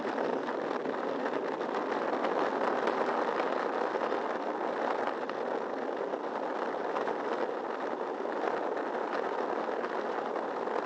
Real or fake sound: real